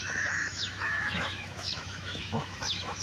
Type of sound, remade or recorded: remade